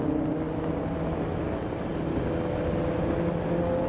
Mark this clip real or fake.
real